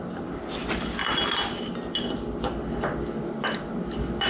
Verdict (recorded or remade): recorded